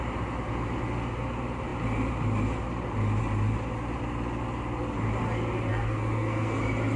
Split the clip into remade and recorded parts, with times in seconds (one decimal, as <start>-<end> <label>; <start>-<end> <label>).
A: 0.0-5.7 recorded; 5.7-6.6 remade; 6.6-7.0 recorded